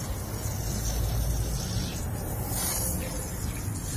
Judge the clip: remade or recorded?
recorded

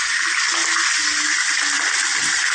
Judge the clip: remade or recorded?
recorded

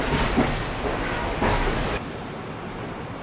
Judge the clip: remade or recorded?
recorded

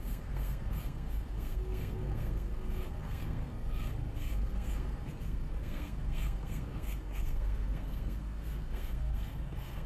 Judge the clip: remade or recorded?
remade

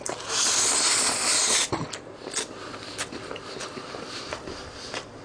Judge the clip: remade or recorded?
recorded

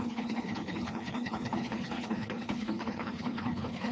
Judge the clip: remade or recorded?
remade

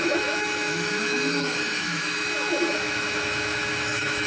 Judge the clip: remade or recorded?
remade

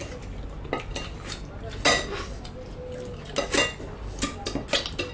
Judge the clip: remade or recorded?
recorded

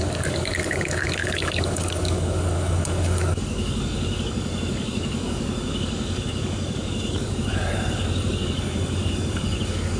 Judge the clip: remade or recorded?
remade